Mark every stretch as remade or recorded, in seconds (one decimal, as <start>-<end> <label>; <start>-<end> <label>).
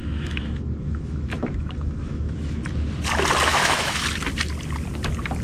0.0-2.6 remade; 2.6-3.5 recorded; 3.5-4.0 remade; 4.0-5.4 recorded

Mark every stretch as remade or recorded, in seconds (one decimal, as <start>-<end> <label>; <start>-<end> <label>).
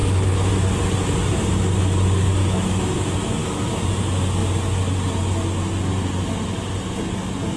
0.0-0.5 remade; 0.5-2.4 recorded; 2.4-3.8 remade; 3.8-7.6 recorded